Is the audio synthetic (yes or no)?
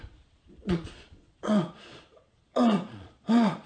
yes